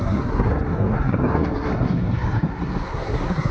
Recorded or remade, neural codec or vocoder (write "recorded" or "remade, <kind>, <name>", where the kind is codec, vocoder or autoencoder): remade, codec, SNAC